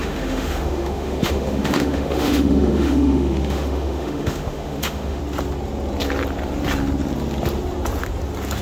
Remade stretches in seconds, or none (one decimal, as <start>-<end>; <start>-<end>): 0.0-5.2